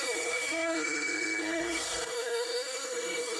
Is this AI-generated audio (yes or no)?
yes